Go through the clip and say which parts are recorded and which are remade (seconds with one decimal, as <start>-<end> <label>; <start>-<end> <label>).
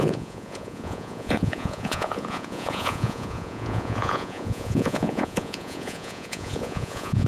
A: 0.0-7.3 remade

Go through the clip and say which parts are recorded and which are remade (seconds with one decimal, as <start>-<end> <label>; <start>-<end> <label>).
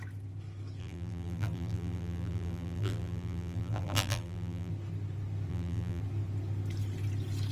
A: 0.0-0.8 recorded; 0.8-4.7 remade; 4.7-5.5 recorded; 5.5-6.0 remade; 6.0-7.5 recorded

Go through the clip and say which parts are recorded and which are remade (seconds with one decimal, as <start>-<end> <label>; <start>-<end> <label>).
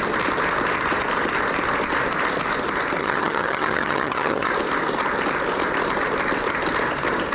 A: 0.0-3.0 recorded; 3.0-4.5 remade; 4.5-7.3 recorded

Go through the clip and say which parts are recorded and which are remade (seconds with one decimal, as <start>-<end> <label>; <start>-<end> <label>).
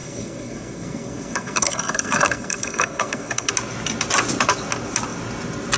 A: 0.0-3.5 remade; 3.5-5.8 recorded